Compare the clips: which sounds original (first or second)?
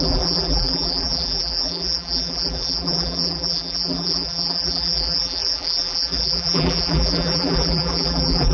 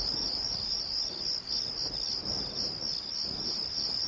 second